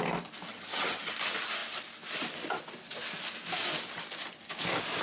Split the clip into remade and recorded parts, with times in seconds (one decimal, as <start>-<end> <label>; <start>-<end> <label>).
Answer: 0.0-0.5 recorded; 0.5-1.1 remade; 1.1-5.0 recorded